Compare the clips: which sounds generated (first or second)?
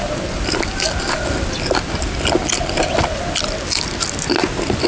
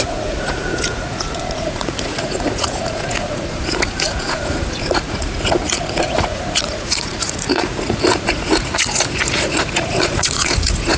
second